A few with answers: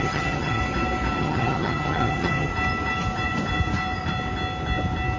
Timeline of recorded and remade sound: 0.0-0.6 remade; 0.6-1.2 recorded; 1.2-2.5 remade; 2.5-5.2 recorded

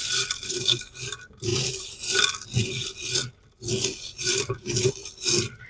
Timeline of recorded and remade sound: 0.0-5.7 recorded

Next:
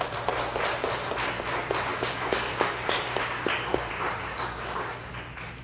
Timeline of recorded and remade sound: 0.0-1.9 recorded; 1.9-3.9 remade; 3.9-4.3 recorded; 4.3-5.1 remade; 5.1-5.6 recorded

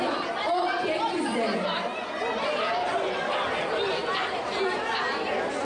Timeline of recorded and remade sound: 0.0-5.6 recorded

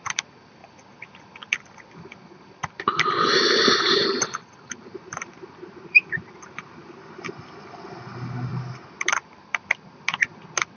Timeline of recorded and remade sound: 0.0-4.2 recorded; 4.2-7.0 remade; 7.0-10.8 recorded